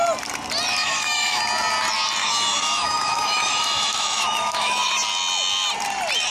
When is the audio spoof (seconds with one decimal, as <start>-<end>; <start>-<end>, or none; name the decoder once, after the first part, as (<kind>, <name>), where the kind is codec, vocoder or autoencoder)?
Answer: 0.8-1.4 (autoencoder, DAC-VAE); 2.2-4.9

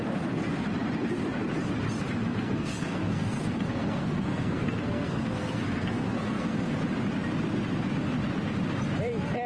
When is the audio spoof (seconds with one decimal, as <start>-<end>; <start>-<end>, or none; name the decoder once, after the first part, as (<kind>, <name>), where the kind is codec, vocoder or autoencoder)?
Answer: 2.3-6.8 (codec, SNAC)

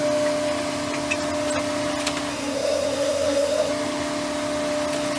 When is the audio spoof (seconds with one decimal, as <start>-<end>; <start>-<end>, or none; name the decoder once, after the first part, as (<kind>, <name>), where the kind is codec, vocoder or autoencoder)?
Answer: 2.3-3.7 (codec, SNAC)

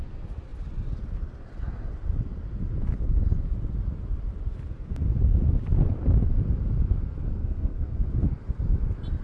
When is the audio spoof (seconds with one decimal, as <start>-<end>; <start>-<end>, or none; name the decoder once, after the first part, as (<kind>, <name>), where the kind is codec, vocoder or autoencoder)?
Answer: 7.3-8.1 (codec, SNAC)

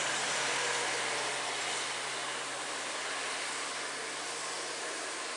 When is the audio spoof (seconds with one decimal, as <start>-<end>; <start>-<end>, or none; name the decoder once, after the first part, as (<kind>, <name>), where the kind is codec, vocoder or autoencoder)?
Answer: none

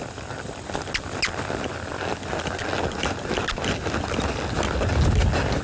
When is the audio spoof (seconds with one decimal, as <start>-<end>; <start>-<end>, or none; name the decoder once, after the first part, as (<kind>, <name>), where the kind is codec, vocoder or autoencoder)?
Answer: none

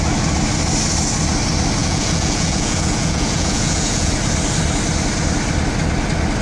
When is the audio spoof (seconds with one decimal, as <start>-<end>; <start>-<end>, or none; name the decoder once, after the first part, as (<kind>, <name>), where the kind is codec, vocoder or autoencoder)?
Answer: 1.8-4.1 (vocoder, Vocos)